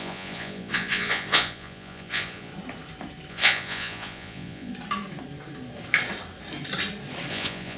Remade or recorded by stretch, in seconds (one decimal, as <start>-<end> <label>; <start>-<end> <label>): 0.0-2.5 remade; 2.5-3.3 recorded; 3.3-4.7 remade; 4.7-7.3 recorded; 7.3-7.8 remade